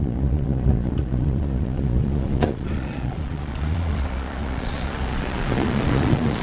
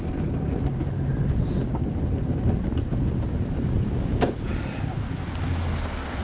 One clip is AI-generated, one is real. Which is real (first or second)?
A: second